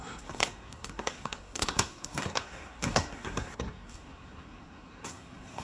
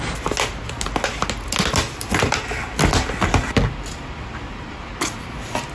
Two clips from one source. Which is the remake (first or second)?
first